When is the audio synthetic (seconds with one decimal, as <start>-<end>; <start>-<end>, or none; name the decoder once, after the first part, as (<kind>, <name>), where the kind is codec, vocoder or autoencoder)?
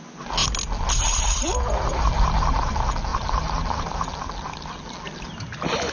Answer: none